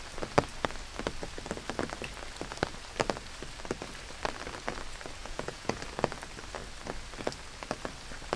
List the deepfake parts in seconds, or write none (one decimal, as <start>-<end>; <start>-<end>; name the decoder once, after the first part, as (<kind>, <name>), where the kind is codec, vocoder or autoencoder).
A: 5.2-5.8 (vocoder, Vocos)